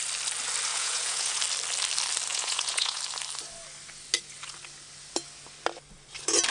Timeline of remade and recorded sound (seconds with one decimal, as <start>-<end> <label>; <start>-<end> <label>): 0.0-0.7 recorded; 0.7-1.4 remade; 1.4-2.3 recorded; 2.3-3.0 remade; 3.0-6.5 recorded